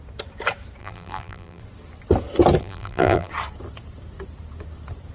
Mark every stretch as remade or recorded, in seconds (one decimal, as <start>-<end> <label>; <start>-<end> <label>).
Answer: 0.0-0.8 recorded; 0.8-1.6 remade; 1.6-2.6 recorded; 2.6-3.3 remade; 3.3-5.1 recorded